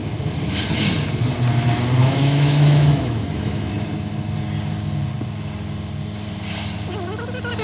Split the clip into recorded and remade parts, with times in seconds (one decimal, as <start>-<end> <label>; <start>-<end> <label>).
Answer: 0.0-2.0 recorded; 2.0-3.7 remade; 3.7-7.6 recorded